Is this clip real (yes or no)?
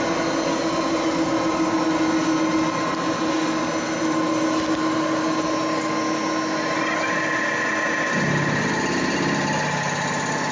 yes